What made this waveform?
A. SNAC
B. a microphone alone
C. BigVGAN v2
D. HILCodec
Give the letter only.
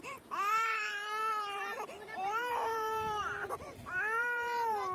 C